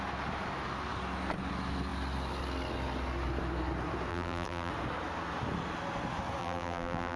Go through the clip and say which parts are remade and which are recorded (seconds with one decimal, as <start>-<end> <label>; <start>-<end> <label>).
0.0-4.1 recorded; 4.1-4.7 remade; 4.7-6.4 recorded; 6.4-7.2 remade